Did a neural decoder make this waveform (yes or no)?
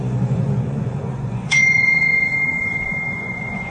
yes